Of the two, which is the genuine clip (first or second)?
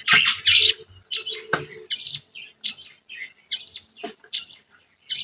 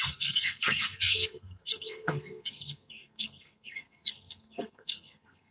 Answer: first